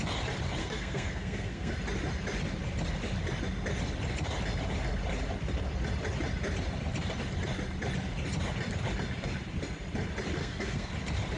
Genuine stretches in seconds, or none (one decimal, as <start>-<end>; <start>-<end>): 0.0-0.6; 1.7-10.4; 10.9-11.4